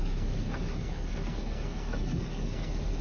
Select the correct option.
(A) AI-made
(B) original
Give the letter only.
A